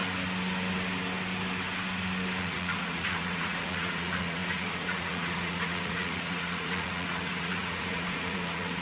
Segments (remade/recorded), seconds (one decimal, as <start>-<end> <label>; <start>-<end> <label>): 0.0-2.4 recorded; 2.4-8.8 remade